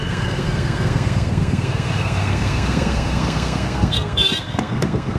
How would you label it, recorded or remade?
remade